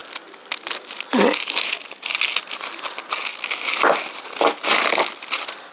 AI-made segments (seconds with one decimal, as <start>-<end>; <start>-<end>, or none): 1.7-2.1